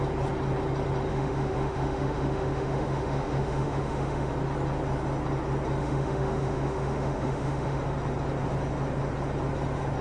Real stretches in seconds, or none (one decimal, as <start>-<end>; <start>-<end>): 0.0-1.1; 4.3-5.8; 7.8-10.0